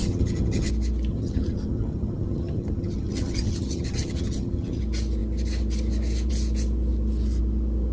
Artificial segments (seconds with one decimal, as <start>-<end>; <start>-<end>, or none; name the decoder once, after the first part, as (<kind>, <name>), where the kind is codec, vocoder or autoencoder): 0.0-0.7 (vocoder, HiFi-GAN); 1.1-4.8